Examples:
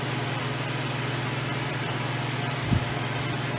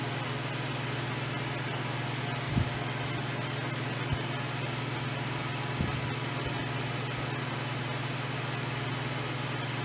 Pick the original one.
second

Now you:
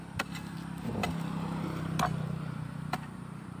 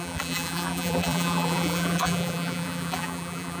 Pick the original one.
first